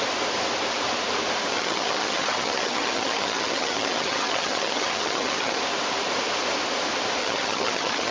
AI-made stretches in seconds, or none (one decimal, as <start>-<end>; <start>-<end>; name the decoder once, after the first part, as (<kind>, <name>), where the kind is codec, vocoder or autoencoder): 1.5-5.6 (vocoder, HiFi-GAN); 7.2-8.1